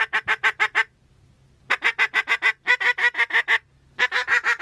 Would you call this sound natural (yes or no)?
yes